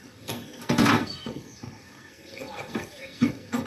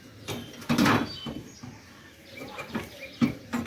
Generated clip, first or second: first